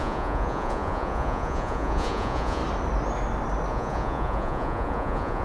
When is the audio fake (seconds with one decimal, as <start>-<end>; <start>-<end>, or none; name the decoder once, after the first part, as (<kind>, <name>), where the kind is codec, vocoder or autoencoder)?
0.0-2.6 (vocoder, Vocos); 3.7-5.4